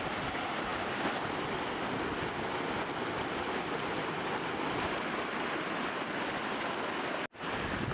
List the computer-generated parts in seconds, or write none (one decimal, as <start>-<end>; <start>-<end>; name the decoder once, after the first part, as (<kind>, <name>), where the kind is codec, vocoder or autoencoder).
none